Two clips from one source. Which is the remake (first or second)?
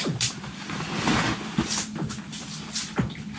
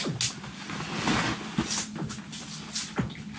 first